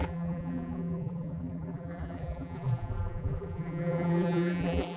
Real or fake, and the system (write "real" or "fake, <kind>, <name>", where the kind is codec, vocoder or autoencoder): fake, vocoder, BigVGAN v2